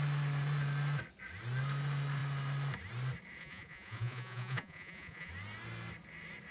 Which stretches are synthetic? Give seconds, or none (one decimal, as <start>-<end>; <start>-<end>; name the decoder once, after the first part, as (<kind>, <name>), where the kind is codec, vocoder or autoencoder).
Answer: 3.4-5.3 (vocoder, Vocos)